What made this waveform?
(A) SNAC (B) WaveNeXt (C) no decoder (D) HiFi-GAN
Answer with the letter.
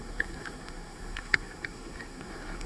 A